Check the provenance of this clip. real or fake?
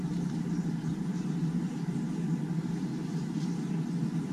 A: fake